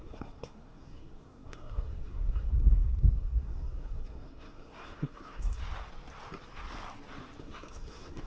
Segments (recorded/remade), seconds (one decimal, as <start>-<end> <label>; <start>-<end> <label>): 0.0-5.6 remade; 5.6-7.4 recorded; 7.4-8.3 remade